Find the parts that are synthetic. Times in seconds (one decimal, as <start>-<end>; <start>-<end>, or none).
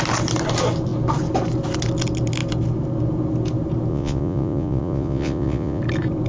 3.9-5.8